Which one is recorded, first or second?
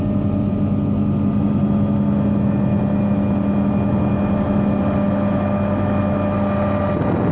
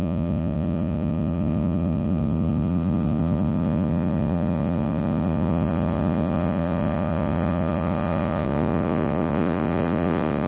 first